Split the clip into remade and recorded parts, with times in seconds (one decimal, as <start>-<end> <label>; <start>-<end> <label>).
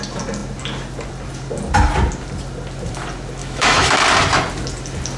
0.0-3.4 recorded; 3.4-4.0 remade; 4.0-5.2 recorded